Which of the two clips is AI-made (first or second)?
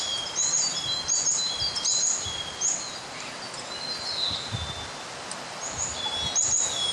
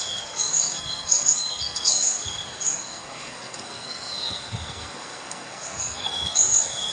second